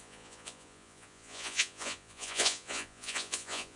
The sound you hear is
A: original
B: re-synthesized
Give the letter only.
B